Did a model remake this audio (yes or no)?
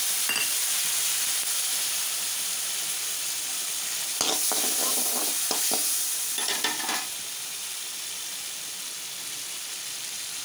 no